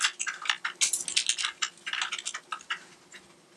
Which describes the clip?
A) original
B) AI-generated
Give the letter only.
A